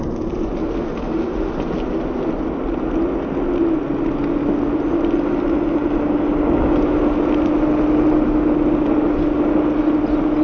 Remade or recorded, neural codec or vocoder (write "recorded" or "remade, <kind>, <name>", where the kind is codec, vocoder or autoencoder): recorded